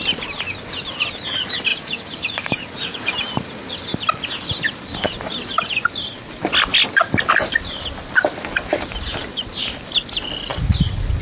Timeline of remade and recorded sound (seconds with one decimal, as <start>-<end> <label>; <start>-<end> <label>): 0.0-1.7 recorded; 1.7-3.1 remade; 3.1-11.2 recorded